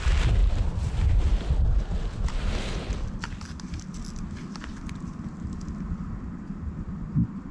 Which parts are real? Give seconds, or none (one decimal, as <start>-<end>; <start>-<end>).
0.0-0.4; 1.4-7.5